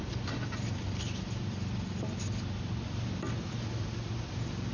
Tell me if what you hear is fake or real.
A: real